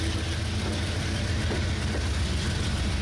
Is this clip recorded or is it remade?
recorded